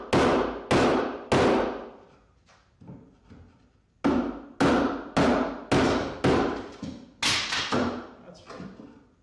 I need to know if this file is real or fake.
real